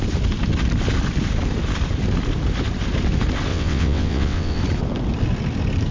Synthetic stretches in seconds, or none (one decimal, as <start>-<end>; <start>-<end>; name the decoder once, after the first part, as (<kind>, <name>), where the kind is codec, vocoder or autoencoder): 3.5-4.6 (vocoder, WaveNeXt)

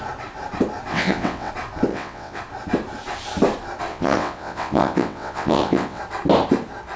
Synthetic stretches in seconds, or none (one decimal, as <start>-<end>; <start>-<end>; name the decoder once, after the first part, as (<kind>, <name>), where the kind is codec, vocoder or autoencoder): 0.9-1.5 (vocoder, WaveNeXt); 1.9-2.4; 3.9-6.0